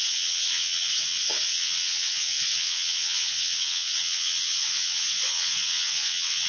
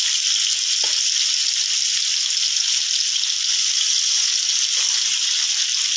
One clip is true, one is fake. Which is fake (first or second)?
first